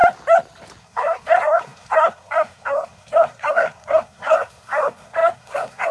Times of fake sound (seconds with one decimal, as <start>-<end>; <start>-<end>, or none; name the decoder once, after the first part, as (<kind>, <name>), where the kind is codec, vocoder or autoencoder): 0.8-5.9 (codec, SNAC)